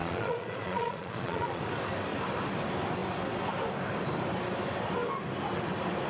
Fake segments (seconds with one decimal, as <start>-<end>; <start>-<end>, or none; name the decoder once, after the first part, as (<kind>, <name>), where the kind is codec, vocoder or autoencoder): 0.0-1.6 (vocoder, Vocos)